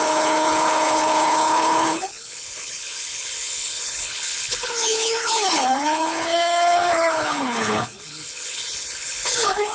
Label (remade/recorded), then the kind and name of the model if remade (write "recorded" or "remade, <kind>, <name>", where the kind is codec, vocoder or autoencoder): remade, codec, HILCodec